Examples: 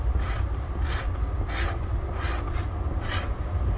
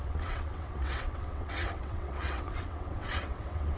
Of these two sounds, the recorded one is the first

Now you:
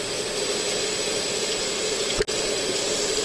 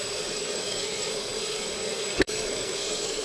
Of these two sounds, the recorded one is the first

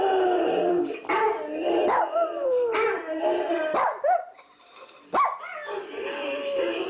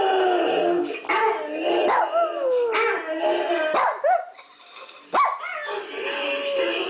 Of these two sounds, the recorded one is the second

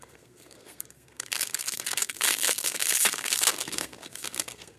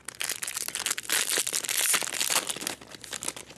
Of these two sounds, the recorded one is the second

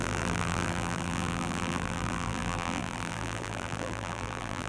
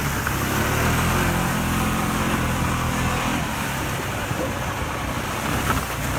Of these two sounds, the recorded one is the second